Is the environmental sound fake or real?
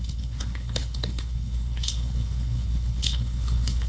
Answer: fake